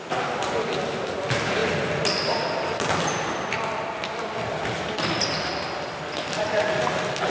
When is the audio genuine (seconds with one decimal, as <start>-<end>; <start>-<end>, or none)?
0.0-7.3